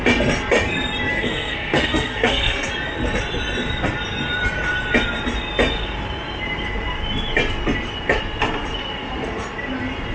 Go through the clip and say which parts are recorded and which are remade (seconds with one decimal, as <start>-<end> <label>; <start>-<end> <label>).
0.0-1.1 recorded; 1.1-2.7 remade; 2.7-10.1 recorded